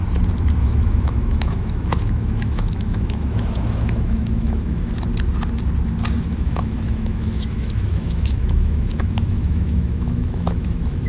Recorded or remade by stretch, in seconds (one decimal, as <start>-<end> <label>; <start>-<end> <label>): 0.0-0.6 recorded; 0.6-4.9 remade; 4.9-6.3 recorded; 6.3-11.1 remade